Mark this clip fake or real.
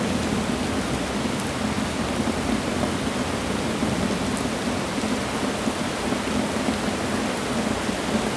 real